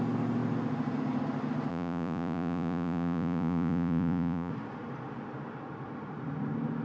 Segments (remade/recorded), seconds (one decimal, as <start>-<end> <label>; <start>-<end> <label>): 0.0-1.7 recorded; 1.7-4.5 remade; 4.5-6.8 recorded